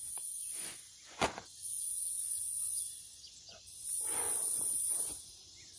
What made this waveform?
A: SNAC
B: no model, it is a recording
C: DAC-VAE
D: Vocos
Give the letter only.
D